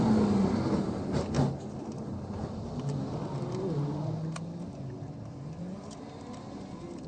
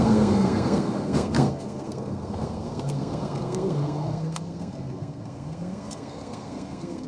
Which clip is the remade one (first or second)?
second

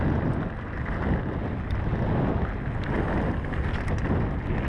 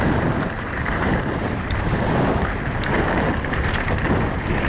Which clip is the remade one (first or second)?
second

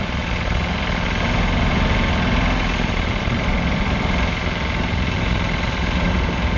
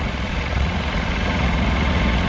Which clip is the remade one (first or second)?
second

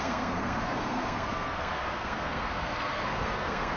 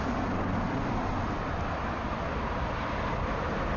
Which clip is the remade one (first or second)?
first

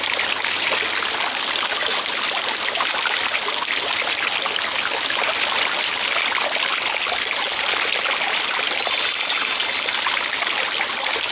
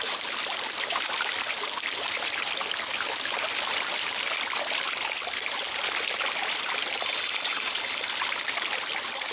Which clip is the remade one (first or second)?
second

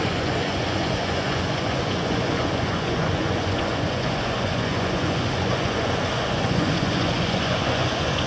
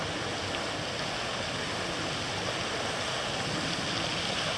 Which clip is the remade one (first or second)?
first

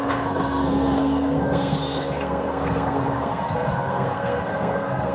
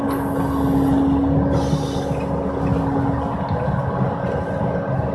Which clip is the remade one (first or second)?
first